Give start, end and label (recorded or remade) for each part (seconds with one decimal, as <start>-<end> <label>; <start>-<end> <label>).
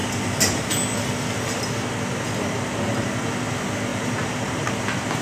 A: 0.0-3.9 recorded; 3.9-4.7 remade; 4.7-5.2 recorded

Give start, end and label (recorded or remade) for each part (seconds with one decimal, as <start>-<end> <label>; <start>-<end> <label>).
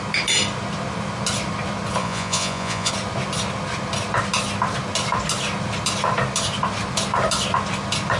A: 0.0-2.0 recorded; 2.0-2.9 remade; 2.9-8.2 recorded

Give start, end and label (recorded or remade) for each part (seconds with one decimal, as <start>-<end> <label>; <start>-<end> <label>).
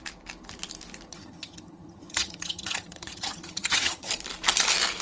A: 0.0-1.1 recorded; 1.1-4.1 remade; 4.1-5.0 recorded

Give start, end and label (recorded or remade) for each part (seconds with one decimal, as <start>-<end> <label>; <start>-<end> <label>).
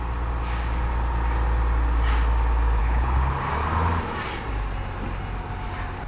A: 0.0-2.8 recorded; 2.8-3.4 remade; 3.4-6.1 recorded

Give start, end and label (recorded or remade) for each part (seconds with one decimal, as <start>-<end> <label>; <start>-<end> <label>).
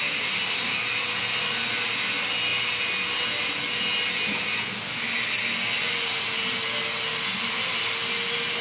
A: 0.0-8.6 recorded